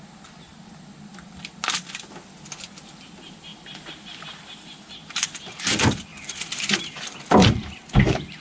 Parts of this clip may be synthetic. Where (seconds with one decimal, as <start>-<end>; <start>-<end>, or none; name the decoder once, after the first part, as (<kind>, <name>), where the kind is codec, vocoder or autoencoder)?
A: none